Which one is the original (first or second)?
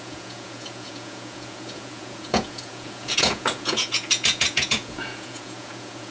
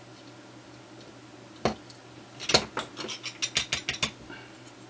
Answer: second